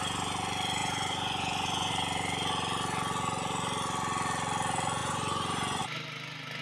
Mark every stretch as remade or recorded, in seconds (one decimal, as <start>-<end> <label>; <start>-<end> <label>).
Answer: 0.0-0.8 recorded; 0.8-1.9 remade; 1.9-5.0 recorded; 5.0-5.8 remade; 5.8-6.6 recorded

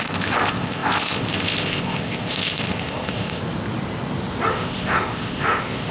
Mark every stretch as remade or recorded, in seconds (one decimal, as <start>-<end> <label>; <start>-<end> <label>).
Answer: 0.0-3.4 remade; 3.4-4.5 recorded; 4.5-5.9 remade

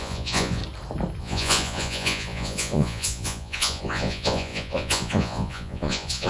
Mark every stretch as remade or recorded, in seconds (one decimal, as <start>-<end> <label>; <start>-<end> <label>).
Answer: 0.0-0.6 remade; 0.6-1.2 recorded; 1.2-6.3 remade

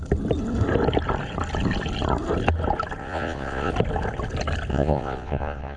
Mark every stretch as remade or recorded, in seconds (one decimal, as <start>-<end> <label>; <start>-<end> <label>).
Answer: 0.0-3.0 recorded; 3.0-3.7 remade; 3.7-4.7 recorded; 4.7-5.8 remade

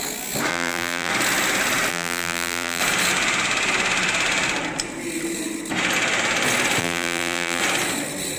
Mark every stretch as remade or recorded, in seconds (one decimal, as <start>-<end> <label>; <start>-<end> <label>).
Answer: 0.0-0.5 recorded; 0.5-1.1 remade; 1.1-1.9 recorded; 1.9-2.8 remade; 2.8-6.8 recorded; 6.8-7.6 remade; 7.6-8.4 recorded

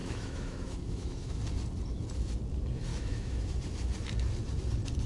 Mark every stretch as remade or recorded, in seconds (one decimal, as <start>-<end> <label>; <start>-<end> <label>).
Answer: 0.0-1.4 remade; 1.4-2.9 recorded; 2.9-3.5 remade; 3.5-5.1 recorded

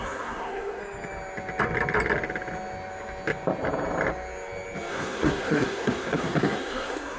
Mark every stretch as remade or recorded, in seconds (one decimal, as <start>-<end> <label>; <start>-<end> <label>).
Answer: 0.0-0.8 remade; 0.8-4.9 recorded; 4.9-7.2 remade

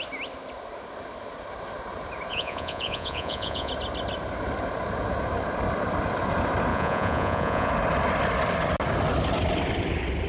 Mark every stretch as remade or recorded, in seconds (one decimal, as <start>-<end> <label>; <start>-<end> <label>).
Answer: 0.0-2.3 recorded; 2.3-3.7 remade; 3.7-6.7 recorded; 6.7-7.7 remade; 7.7-10.3 recorded